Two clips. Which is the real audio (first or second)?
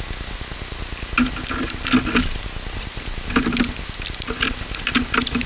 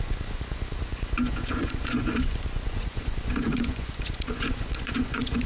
first